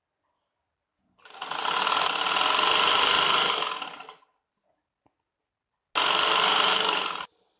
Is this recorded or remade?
recorded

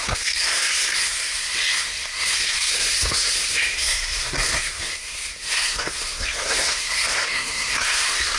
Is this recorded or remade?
remade